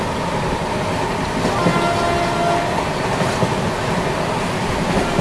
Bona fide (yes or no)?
yes